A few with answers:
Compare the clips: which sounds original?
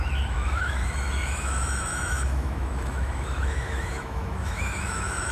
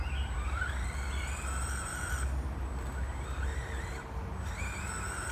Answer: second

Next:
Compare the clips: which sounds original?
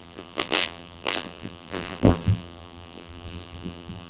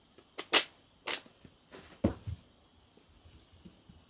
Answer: second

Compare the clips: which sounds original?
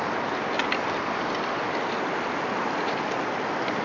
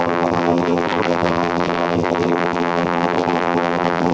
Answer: first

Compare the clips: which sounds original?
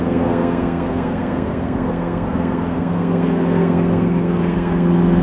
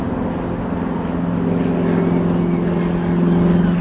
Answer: second